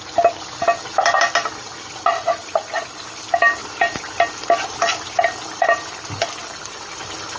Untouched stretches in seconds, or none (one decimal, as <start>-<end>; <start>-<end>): 0.0-7.4